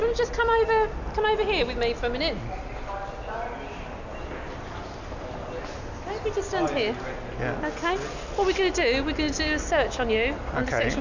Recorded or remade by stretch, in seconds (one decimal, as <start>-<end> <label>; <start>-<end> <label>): 0.0-11.0 recorded